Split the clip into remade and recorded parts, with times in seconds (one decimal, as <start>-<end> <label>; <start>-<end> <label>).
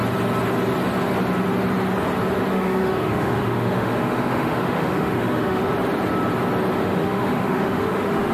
0.0-2.5 recorded; 2.5-5.6 remade; 5.6-6.8 recorded; 6.8-8.3 remade